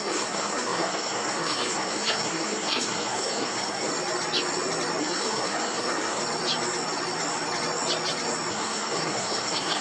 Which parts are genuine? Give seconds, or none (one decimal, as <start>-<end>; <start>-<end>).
3.9-5.0; 6.2-8.5